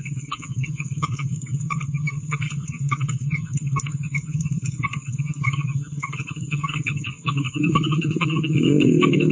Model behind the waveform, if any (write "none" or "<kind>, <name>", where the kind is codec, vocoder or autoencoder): codec, SNAC